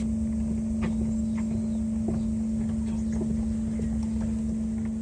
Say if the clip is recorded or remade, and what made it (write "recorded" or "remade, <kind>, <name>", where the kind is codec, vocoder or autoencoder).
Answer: recorded